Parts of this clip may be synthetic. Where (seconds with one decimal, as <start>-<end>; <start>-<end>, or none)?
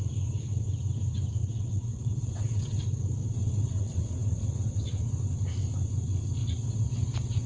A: 1.4-2.8; 3.2-5.1; 6.4-7.5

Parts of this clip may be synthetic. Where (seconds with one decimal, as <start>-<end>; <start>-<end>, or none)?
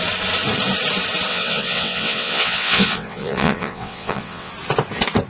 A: 1.3-4.5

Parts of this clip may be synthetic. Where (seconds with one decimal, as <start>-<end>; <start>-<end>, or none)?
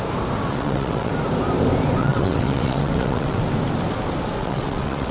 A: 0.5-1.1; 2.0-3.4; 4.4-5.1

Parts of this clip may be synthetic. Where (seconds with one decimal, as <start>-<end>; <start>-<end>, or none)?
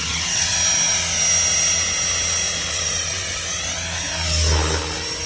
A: 0.0-0.5; 2.7-3.4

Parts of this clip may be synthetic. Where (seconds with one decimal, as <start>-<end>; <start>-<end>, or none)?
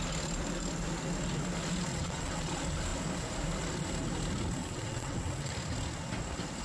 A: 1.9-2.5; 4.6-5.5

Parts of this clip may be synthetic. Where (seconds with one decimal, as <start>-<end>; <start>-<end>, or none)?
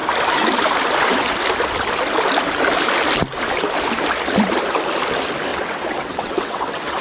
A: 5.5-7.0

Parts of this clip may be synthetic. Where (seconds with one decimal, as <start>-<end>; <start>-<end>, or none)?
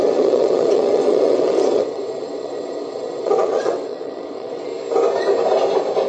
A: 0.0-4.7